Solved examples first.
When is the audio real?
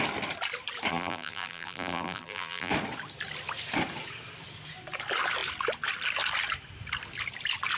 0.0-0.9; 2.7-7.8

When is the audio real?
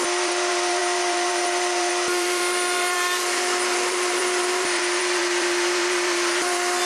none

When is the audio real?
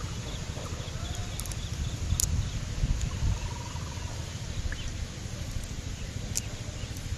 0.0-5.3; 6.5-7.2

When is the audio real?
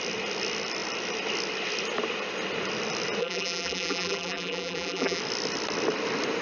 0.0-3.2; 5.2-6.4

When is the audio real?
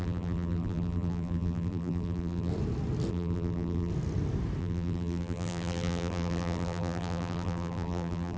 2.5-3.1; 3.9-4.6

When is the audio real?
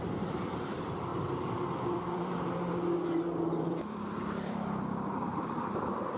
none